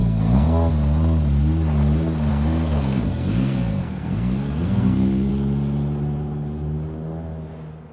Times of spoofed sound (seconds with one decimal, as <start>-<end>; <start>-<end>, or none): 0.0-0.7; 2.3-5.3